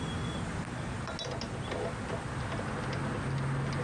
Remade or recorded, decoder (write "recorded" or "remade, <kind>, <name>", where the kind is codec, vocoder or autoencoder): recorded